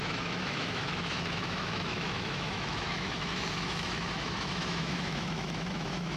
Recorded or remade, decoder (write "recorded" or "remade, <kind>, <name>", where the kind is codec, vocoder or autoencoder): remade, autoencoder, DAC-VAE